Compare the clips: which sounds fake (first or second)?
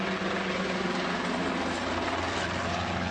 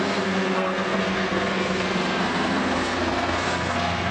second